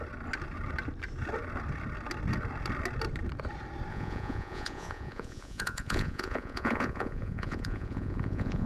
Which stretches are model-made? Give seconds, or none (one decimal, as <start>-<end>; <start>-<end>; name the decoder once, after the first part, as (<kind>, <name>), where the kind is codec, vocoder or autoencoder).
3.9-8.7 (vocoder, Vocos)